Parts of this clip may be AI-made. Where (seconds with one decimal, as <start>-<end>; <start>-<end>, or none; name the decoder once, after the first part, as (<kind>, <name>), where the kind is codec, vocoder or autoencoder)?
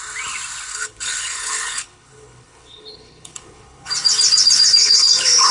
0.7-3.9 (codec, HILCodec); 4.8-5.5